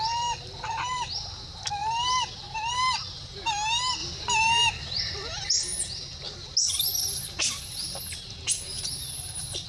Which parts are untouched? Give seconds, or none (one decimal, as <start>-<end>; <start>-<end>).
0.0-9.7